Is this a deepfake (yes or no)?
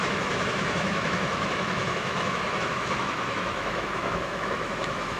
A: yes